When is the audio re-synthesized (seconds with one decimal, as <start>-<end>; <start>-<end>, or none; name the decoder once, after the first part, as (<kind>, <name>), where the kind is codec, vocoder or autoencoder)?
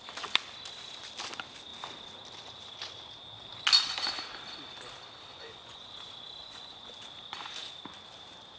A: 5.3-5.9 (vocoder, Vocos); 6.4-6.9